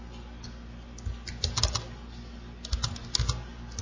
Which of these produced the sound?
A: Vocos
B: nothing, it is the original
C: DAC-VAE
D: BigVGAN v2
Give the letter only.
B